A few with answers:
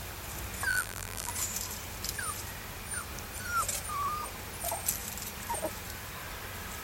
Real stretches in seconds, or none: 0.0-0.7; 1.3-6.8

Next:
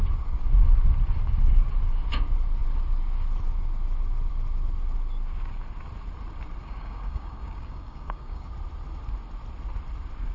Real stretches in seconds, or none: 0.0-6.6; 8.5-10.3

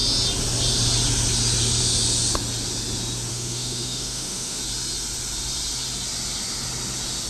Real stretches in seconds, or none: 0.0-3.3; 4.6-7.3

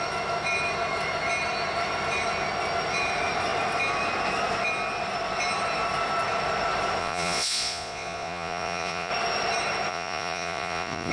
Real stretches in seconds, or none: 0.0-7.0; 9.1-9.9

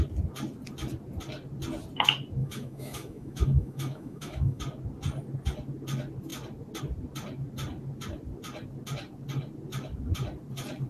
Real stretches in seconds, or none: 0.0-2.4; 4.6-10.9

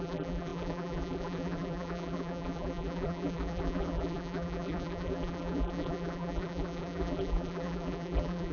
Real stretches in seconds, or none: none

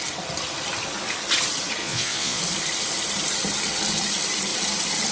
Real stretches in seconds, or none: 0.0-1.8; 2.4-5.1

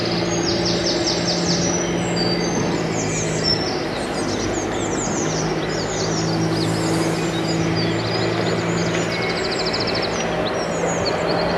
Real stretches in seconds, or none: 0.0-11.6